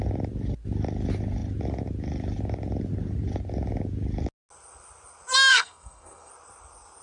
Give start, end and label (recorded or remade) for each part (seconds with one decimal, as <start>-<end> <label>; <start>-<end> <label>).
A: 0.0-5.5 recorded; 5.5-6.3 remade; 6.3-7.0 recorded

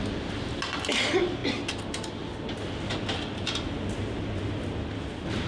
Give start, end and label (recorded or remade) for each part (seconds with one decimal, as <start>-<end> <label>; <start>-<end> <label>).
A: 0.0-5.5 recorded

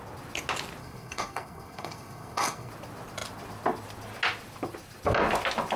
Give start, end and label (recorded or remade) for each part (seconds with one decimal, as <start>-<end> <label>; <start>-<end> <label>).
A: 0.0-0.8 recorded; 0.8-2.7 remade; 2.7-5.8 recorded

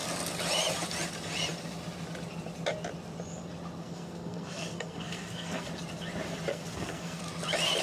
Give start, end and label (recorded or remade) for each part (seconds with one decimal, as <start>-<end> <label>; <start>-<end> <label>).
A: 0.0-3.8 recorded; 3.8-5.7 remade; 5.7-6.5 recorded; 6.5-7.2 remade; 7.2-7.8 recorded